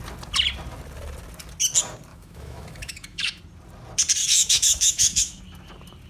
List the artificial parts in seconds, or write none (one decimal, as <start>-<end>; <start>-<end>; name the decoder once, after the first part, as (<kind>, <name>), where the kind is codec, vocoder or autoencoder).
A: 2.1-3.4 (autoencoder, DAC-VAE); 4.2-5.4